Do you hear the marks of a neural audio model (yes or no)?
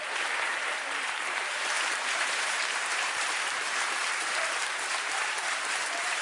yes